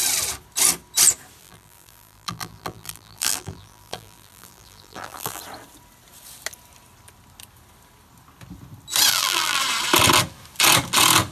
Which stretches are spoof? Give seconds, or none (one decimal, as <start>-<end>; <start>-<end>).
1.4-5.4; 9.1-9.6